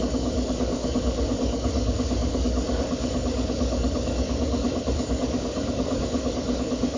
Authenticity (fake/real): fake